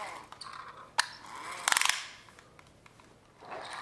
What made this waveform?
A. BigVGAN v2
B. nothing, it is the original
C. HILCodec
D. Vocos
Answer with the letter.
B